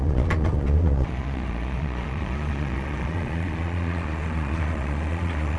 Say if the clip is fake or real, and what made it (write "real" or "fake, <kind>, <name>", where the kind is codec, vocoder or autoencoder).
fake, vocoder, Vocos